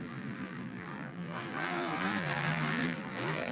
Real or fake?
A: fake